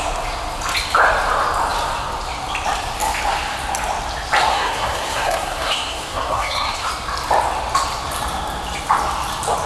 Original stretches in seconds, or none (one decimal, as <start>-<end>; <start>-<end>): 0.0-4.5; 6.9-9.7